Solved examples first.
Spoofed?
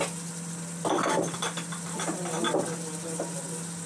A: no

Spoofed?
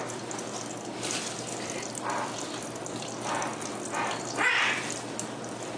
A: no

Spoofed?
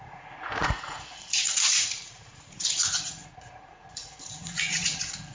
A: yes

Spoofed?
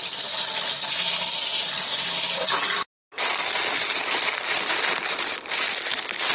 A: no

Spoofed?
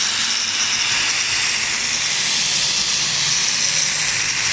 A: no